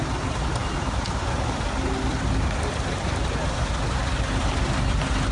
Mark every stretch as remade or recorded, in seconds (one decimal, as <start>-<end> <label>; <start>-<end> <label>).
0.0-5.3 recorded